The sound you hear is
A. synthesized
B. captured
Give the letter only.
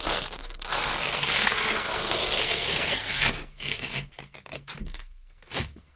A